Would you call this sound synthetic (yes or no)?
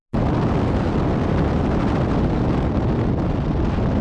no